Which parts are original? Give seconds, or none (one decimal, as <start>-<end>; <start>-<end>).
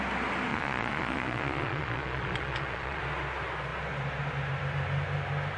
0.0-0.5; 3.0-5.6